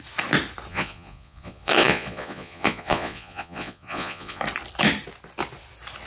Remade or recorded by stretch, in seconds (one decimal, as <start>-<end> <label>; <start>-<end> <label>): 0.0-0.7 recorded; 0.7-4.4 remade; 4.4-6.1 recorded